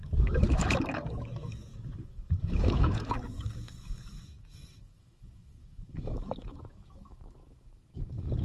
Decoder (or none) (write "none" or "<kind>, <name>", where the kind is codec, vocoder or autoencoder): autoencoder, DAC-VAE